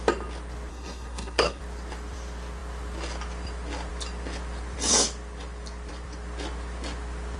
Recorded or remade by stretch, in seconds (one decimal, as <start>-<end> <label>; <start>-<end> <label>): 0.0-0.7 recorded; 0.7-1.6 remade; 1.6-7.4 recorded